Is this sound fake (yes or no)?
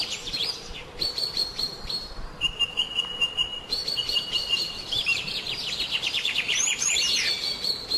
yes